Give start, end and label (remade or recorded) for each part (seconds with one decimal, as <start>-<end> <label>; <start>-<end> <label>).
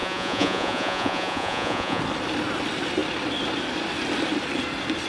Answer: 0.0-2.0 remade; 2.0-5.1 recorded